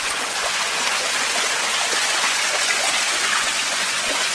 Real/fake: fake